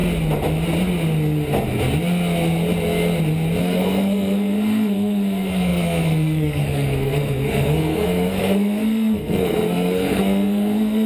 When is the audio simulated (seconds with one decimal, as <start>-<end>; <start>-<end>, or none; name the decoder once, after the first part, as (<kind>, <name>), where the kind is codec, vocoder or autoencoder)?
3.6-11.1 (codec, SNAC)